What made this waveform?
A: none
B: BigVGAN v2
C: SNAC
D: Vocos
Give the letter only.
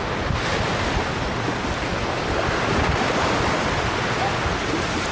A